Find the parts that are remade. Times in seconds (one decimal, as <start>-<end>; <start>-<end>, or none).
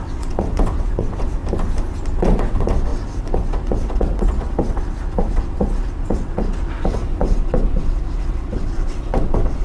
0.0-1.4; 2.2-9.6